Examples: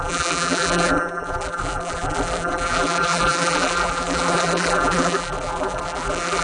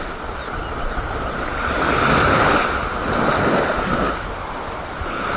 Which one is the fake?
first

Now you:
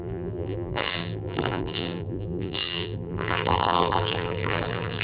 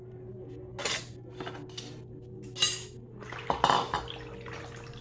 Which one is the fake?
first